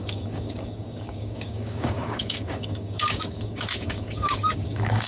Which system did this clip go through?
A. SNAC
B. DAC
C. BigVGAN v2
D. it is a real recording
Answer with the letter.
B